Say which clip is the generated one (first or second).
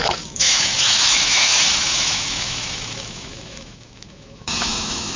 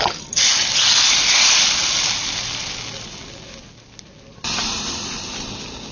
first